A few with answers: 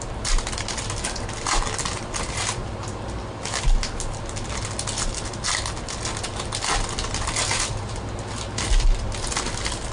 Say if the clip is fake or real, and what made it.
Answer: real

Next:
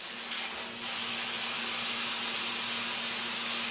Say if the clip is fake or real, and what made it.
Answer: real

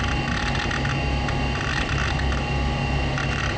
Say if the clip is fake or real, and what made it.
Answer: real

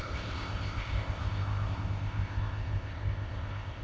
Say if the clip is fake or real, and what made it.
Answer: fake, codec, ZipCodec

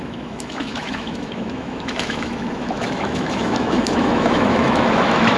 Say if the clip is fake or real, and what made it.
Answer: fake, autoencoder, DAC-VAE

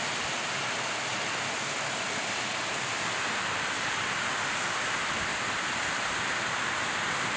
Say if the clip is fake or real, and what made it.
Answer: real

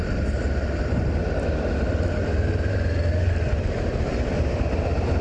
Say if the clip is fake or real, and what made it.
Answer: real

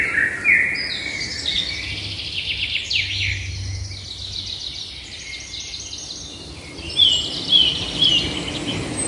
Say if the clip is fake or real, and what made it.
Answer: real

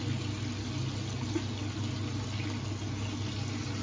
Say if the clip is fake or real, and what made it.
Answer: real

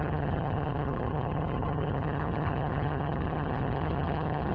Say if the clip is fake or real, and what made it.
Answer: fake, vocoder, HiFi-GAN